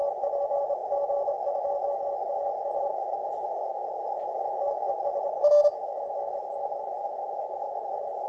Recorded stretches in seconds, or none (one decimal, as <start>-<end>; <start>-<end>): 0.0-8.3